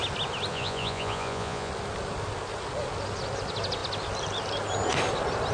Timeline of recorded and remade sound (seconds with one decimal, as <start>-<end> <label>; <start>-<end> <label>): 0.0-0.5 recorded; 0.5-1.7 remade; 1.7-5.5 recorded